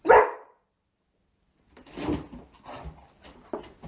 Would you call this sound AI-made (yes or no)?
no